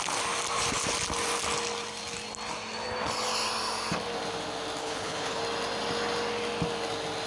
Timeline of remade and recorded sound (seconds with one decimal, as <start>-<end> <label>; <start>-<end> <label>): 0.0-4.8 recorded; 4.8-5.4 remade; 5.4-7.3 recorded